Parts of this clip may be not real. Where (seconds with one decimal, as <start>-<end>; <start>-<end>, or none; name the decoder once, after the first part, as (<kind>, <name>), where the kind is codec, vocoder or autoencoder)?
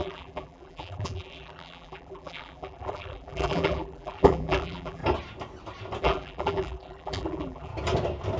0.0-5.0 (vocoder, BigVGAN v2); 6.0-7.7